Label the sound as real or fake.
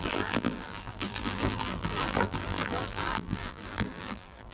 fake